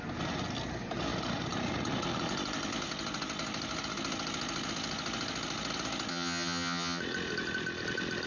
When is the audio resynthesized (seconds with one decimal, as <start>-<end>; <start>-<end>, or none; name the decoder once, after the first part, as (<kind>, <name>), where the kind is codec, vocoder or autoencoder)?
6.1-7.0 (vocoder, HiFi-GAN)